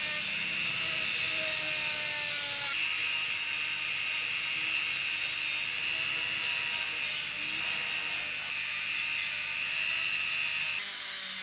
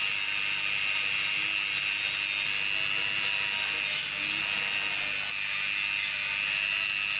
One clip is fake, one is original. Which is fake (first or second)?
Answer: first